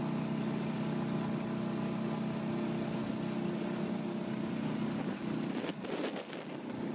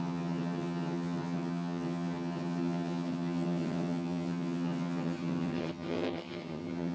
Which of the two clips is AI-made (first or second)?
second